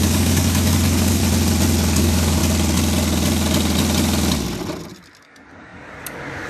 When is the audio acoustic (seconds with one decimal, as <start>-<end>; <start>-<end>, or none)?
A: 1.2-2.0; 2.4-5.2